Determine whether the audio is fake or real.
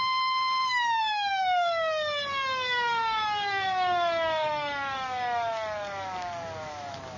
fake